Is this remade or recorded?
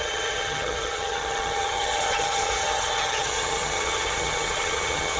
remade